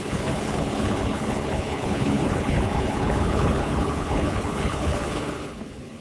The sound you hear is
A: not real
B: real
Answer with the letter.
A